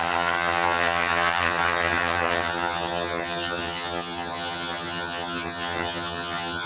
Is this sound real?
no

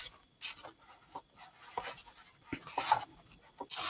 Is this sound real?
yes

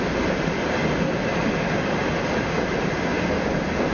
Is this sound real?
yes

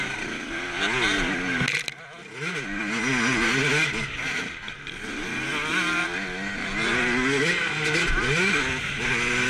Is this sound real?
yes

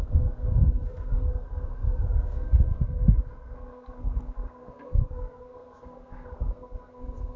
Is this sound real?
no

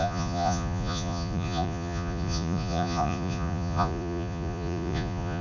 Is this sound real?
no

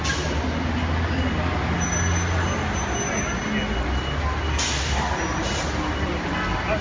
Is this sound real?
yes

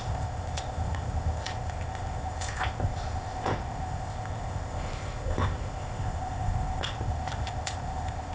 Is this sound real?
no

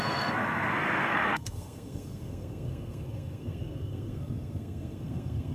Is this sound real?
no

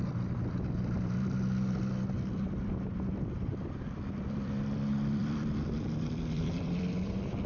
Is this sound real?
no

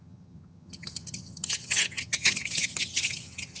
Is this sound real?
no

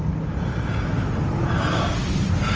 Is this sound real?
yes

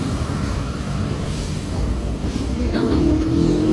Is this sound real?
no